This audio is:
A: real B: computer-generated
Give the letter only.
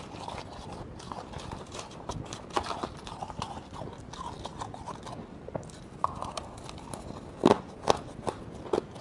A